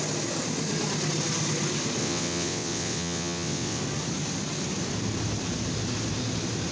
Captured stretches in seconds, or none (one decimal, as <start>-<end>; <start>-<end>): 0.0-2.0; 3.8-6.7

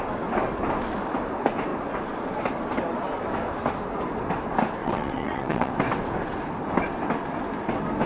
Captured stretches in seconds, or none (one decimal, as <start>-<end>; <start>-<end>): 0.0-4.8; 5.7-8.1